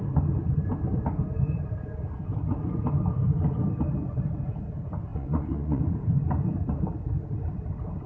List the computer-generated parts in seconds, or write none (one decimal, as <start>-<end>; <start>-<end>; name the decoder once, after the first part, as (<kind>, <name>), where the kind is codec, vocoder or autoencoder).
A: 5.1-5.8 (vocoder, Vocos)